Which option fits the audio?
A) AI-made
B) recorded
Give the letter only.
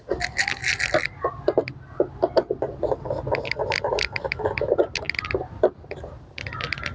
B